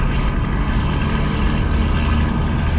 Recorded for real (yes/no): yes